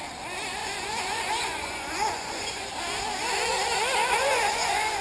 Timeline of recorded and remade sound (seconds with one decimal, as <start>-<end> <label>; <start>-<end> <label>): 0.0-0.6 recorded; 0.6-2.7 remade; 2.7-4.0 recorded; 4.0-5.0 remade